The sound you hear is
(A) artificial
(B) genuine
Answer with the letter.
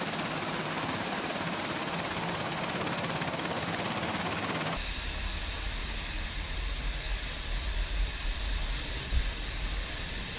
B